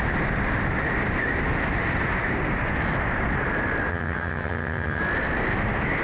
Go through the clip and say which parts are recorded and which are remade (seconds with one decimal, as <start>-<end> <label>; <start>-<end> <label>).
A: 0.0-3.9 recorded; 3.9-5.0 remade; 5.0-6.0 recorded